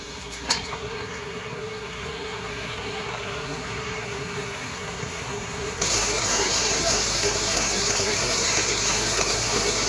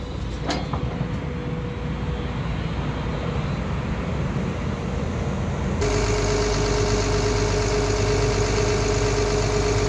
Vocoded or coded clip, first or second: first